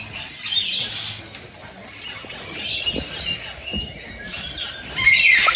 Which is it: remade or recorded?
recorded